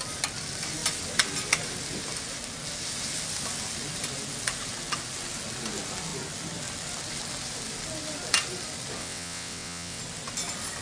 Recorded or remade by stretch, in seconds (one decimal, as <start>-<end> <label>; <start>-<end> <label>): 0.0-9.0 recorded; 9.0-10.0 remade; 10.0-10.8 recorded